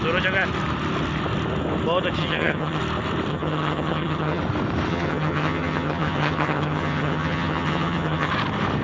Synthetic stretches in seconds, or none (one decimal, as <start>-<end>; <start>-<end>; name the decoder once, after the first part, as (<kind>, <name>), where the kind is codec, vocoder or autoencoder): 2.2-2.8 (vocoder, HiFi-GAN); 3.3-4.4; 4.9-8.3